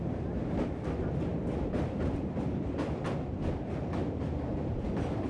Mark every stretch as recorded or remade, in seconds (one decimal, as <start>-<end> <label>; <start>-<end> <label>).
0.0-5.3 recorded